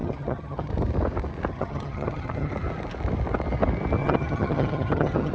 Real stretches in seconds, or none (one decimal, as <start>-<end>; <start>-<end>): 0.7-1.5; 2.5-4.0